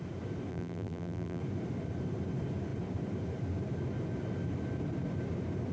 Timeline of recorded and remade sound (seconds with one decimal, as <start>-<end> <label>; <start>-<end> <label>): 0.0-0.5 recorded; 0.5-1.4 remade; 1.4-5.7 recorded